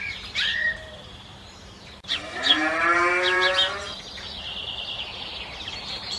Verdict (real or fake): fake